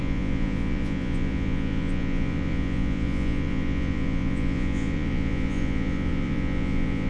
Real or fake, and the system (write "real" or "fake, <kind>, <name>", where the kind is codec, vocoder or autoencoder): fake, vocoder, Vocos